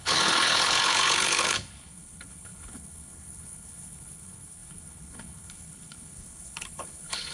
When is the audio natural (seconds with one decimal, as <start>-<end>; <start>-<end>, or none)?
none